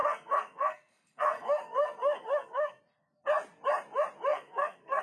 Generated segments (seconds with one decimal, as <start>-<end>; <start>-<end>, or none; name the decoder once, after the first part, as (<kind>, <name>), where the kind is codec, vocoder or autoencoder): 0.0-2.8 (codec, SNAC); 4.3-5.0